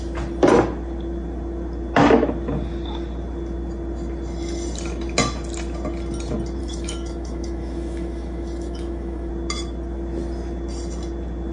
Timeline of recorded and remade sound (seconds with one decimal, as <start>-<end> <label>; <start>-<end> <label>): 0.0-6.6 recorded; 6.6-9.3 remade; 9.3-11.5 recorded